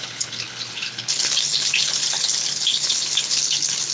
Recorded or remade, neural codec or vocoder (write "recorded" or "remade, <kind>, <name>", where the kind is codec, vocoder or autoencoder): remade, codec, HILCodec